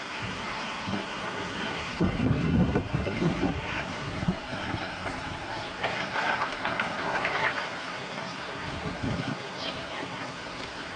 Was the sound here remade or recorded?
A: remade